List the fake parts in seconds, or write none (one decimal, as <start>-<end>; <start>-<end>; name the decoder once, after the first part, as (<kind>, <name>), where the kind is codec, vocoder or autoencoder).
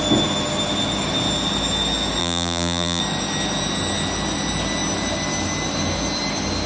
2.2-3.0 (vocoder, BigVGAN v2)